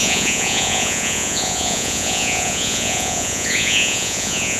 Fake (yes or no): yes